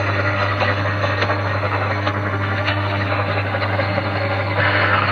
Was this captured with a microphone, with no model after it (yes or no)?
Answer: no